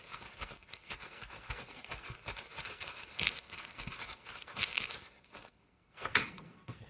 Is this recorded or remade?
remade